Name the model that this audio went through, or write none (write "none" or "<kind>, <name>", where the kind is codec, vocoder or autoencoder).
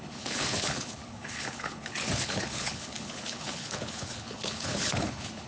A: codec, HILCodec